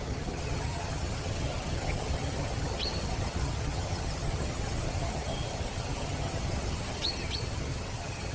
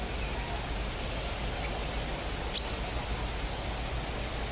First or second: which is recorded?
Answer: second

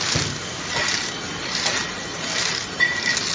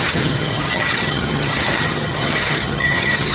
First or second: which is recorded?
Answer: first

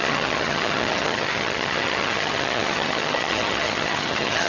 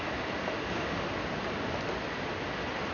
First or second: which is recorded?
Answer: second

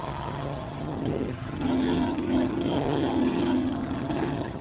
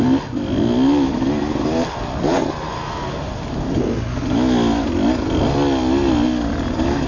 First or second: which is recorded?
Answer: second